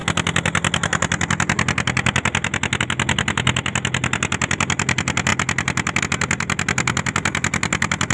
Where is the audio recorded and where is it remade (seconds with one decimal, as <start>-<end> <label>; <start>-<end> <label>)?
0.0-8.1 recorded